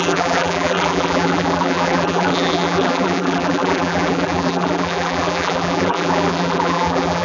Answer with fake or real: fake